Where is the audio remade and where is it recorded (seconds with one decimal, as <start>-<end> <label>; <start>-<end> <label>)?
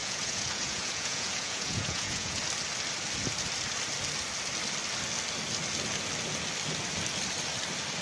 0.0-2.4 remade; 2.4-8.0 recorded